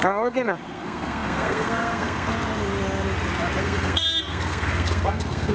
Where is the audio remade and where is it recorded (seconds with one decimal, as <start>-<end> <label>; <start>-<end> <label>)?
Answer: 0.0-2.3 remade; 2.3-3.6 recorded; 3.6-5.5 remade